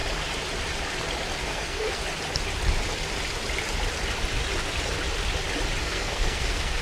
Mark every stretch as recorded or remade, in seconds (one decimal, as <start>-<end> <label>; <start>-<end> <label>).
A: 0.0-1.4 recorded; 1.4-2.0 remade; 2.0-5.8 recorded; 5.8-6.8 remade